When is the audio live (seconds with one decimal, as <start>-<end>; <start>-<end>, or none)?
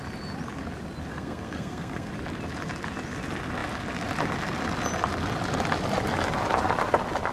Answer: 0.0-1.1; 2.1-7.3